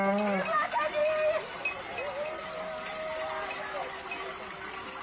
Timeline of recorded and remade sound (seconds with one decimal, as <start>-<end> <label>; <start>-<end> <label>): 0.0-5.0 recorded